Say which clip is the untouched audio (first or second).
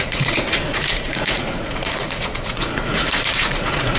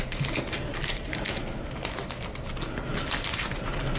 second